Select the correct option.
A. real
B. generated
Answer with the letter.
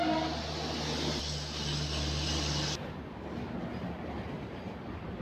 A